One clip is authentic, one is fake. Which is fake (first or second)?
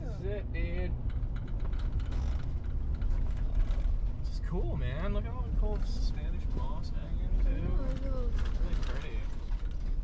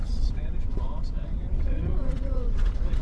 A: second